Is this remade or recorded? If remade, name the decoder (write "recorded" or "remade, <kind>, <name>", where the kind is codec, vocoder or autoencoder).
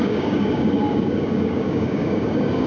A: remade, codec, DAC